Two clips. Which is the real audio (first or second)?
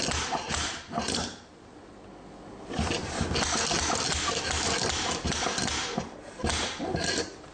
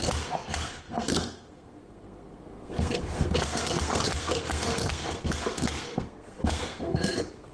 first